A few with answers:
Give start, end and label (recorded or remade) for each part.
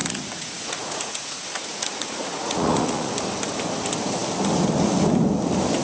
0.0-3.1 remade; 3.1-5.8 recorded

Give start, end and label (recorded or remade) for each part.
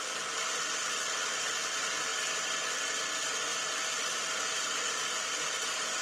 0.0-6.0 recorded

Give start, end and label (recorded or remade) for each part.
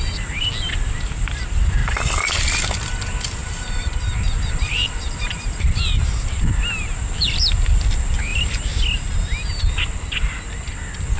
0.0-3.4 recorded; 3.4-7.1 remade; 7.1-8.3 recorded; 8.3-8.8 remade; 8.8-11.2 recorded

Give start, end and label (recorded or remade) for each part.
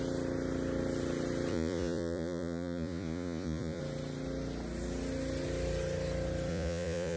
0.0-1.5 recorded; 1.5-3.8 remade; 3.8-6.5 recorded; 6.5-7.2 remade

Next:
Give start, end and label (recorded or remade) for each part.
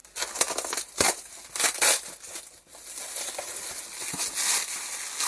0.0-5.3 recorded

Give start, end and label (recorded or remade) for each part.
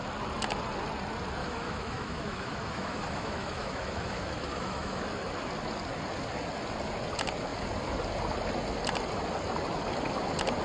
0.0-1.4 recorded; 1.4-5.0 remade; 5.0-10.6 recorded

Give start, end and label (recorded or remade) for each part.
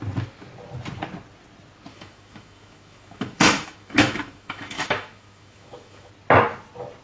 0.0-1.9 recorded; 1.9-6.1 remade; 6.1-7.0 recorded